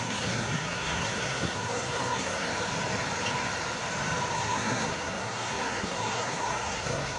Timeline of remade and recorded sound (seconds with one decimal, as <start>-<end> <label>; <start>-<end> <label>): 0.0-2.5 remade; 2.5-4.3 recorded; 4.3-7.2 remade